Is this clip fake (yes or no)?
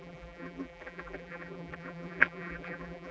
yes